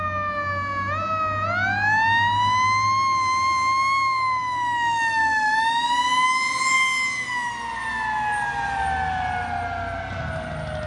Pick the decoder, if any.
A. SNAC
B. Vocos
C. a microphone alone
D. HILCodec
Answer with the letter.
C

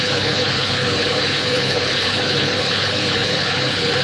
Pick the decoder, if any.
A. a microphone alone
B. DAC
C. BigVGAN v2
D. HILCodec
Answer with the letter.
D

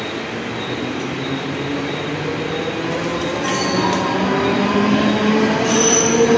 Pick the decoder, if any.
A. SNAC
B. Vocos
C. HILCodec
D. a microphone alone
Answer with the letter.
D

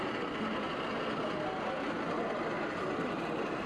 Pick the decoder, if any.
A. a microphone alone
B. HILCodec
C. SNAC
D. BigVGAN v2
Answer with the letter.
A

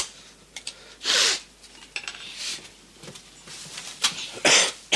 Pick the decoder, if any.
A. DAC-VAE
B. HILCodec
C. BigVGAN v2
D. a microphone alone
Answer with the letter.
D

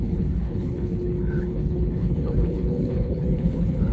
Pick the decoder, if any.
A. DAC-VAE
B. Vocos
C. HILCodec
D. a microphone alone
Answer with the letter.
C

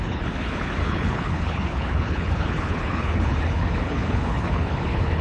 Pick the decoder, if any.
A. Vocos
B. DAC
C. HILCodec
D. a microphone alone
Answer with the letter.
C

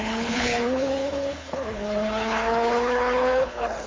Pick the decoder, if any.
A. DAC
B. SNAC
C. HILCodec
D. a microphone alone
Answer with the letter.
C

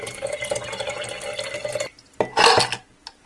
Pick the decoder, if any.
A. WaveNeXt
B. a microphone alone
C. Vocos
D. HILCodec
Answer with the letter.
B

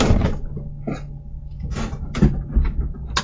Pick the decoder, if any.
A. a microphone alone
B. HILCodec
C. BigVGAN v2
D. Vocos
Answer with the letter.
A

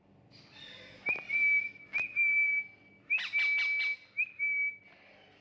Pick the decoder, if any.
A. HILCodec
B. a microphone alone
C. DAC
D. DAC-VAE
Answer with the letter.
B